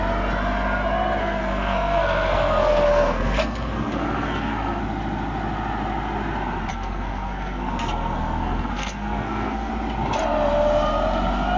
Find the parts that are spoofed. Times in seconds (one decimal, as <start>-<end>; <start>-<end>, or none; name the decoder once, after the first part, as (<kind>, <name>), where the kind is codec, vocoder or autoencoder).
1.2-4.8 (codec, SNAC); 6.7-9.7